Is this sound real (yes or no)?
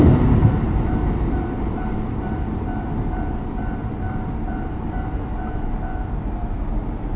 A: no